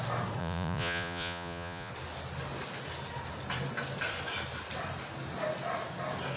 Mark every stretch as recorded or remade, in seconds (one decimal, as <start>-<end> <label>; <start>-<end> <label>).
0.0-0.4 recorded; 0.4-1.9 remade; 1.9-6.4 recorded